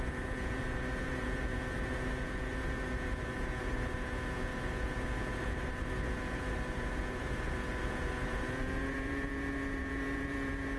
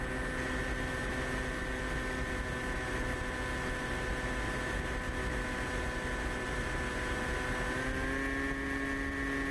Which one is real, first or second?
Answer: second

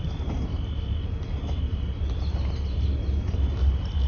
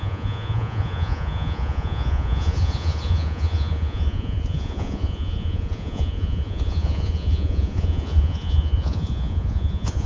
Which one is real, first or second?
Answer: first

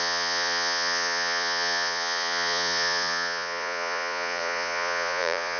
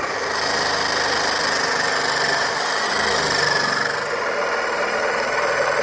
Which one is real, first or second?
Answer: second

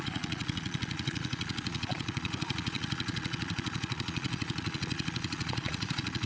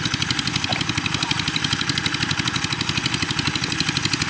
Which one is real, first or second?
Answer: second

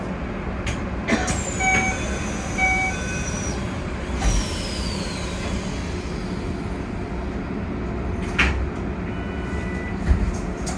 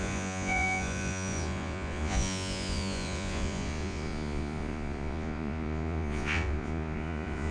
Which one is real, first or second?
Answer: first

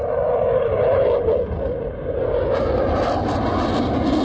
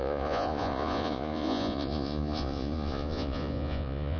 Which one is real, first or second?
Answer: first